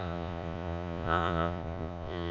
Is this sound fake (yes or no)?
yes